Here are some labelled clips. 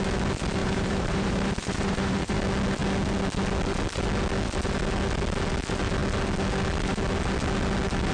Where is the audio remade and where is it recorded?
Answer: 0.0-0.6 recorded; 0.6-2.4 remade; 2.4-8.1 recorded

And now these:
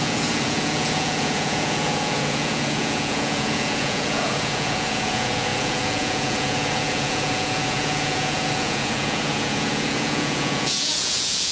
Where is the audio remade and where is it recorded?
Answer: 0.0-11.5 remade

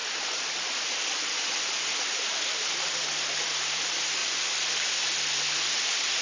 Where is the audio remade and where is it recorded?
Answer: 0.0-4.2 remade; 4.2-5.3 recorded; 5.3-6.2 remade

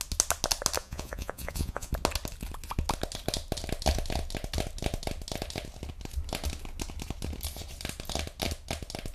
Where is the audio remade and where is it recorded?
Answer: 0.0-0.8 recorded; 0.8-1.9 remade; 1.9-9.1 recorded

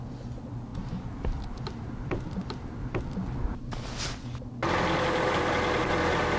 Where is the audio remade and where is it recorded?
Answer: 0.0-0.7 recorded; 0.7-3.0 remade; 3.0-6.4 recorded

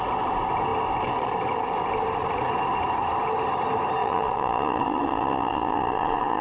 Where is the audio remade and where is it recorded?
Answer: 0.0-4.0 recorded; 4.0-6.4 remade

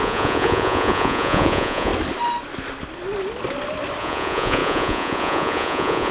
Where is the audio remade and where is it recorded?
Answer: 0.0-1.9 remade; 1.9-4.0 recorded; 4.0-6.1 remade

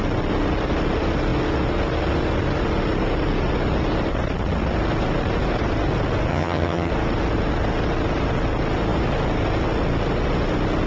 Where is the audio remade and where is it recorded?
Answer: 0.0-6.3 recorded; 6.3-6.9 remade; 6.9-10.9 recorded